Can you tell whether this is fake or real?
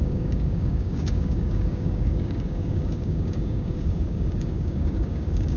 fake